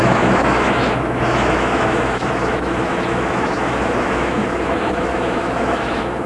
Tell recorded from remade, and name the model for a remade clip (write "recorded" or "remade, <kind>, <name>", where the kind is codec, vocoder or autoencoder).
remade, autoencoder, DAC-VAE